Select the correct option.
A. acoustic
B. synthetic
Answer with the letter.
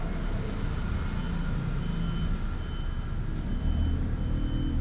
A